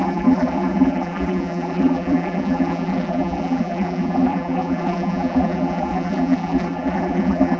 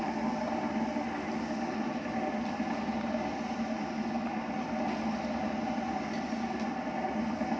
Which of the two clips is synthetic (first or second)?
first